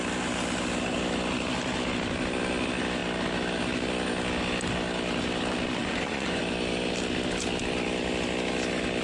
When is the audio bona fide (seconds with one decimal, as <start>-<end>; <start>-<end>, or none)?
0.0-5.8; 6.4-9.0